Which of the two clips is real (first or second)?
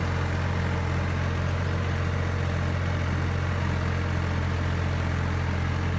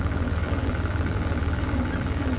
first